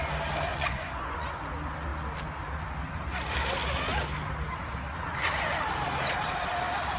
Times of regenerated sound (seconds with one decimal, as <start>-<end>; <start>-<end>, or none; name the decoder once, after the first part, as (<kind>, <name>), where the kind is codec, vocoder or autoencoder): 0.5-1.3 (vocoder, Vocos)